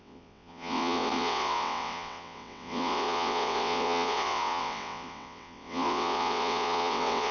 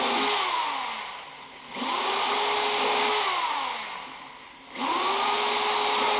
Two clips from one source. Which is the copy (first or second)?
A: first